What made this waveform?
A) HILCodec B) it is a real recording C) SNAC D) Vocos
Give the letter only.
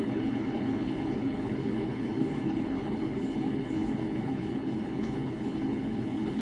A